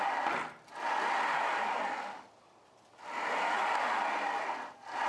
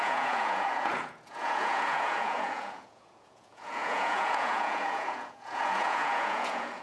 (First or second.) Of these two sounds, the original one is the first